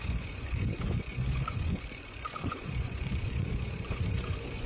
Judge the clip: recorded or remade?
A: remade